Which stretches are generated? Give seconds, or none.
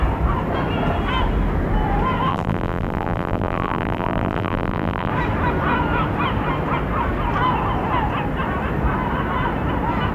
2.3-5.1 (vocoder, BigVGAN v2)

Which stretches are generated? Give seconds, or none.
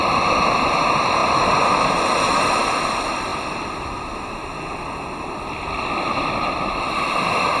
none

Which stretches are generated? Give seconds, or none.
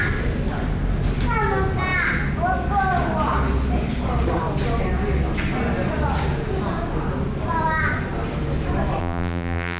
9.0-9.8 (vocoder, BigVGAN v2)